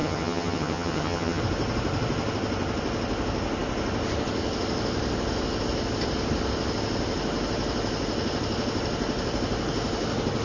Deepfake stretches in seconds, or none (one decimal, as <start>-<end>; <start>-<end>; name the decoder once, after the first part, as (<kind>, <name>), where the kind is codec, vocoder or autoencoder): 0.0-1.4 (vocoder, HiFi-GAN)